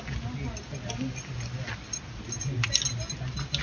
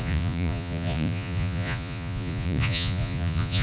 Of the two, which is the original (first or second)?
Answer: first